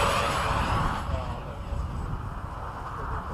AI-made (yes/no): no